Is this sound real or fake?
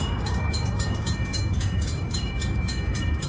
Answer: fake